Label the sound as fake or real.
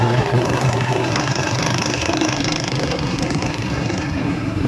fake